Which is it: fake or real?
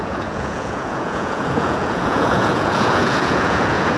fake